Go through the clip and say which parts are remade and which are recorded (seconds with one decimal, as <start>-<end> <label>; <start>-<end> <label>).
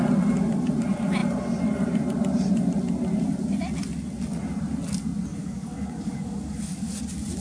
0.0-5.3 recorded; 5.3-7.0 remade; 7.0-7.4 recorded